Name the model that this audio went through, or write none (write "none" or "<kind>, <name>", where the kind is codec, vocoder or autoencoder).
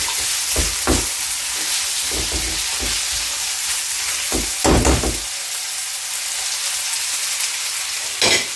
none